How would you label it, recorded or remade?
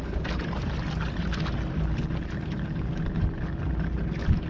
recorded